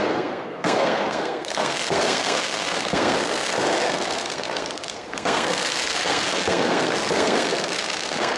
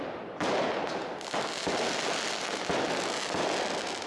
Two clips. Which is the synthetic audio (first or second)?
first